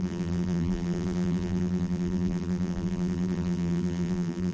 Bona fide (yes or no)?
no